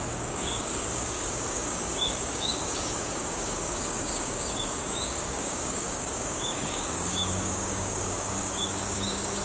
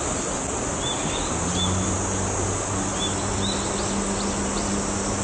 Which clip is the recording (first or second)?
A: second